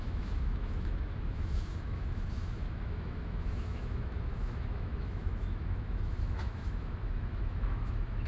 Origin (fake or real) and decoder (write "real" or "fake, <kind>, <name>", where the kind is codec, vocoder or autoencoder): fake, autoencoder, DAC-VAE